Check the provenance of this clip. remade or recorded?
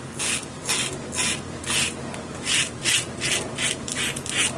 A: recorded